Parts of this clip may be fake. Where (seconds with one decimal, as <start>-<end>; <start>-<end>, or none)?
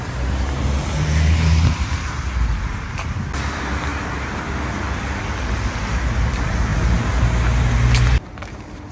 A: none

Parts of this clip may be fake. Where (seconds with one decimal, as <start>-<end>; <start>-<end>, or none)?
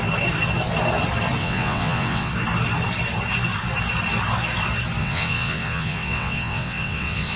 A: 1.4-2.3; 5.0-7.4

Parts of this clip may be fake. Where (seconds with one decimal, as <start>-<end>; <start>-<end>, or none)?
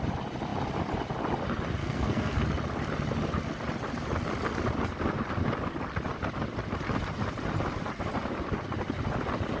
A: 1.8-2.4